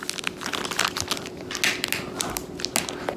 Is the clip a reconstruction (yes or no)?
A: no